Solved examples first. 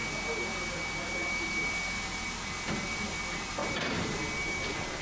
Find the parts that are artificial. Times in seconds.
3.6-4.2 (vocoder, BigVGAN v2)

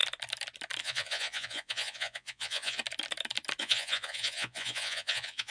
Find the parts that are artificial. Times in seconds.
0.8-2.8 (vocoder, Vocos); 3.6-5.5

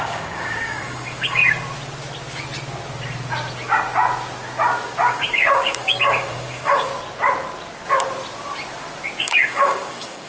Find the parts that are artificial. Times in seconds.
0.0-1.4 (codec, DAC); 5.1-6.9; 9.2-10.3

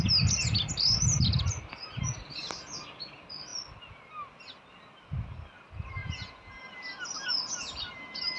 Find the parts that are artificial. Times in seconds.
6.0-6.6 (vocoder, Vocos)

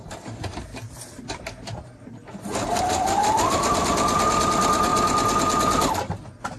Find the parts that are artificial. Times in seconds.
0.0-0.7 (vocoder, BigVGAN v2); 2.8-4.9

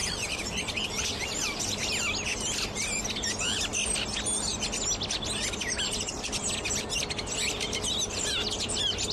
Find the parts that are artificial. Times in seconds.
0.0-1.6 (vocoder, BigVGAN v2)

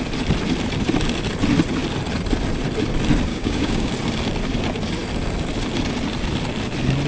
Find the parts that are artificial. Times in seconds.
3.3-3.9 (codec, DAC)

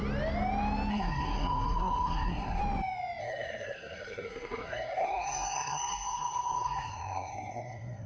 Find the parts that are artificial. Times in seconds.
0.9-2.6 (codec, SNAC); 3.2-8.1